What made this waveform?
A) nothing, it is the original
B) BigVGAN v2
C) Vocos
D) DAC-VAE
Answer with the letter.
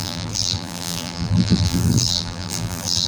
B